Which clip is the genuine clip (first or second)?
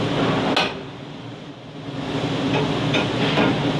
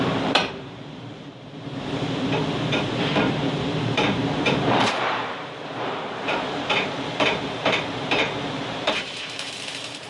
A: first